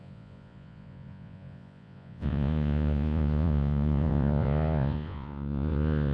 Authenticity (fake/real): fake